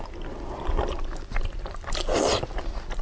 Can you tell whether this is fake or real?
real